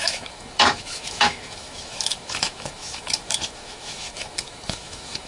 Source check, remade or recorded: remade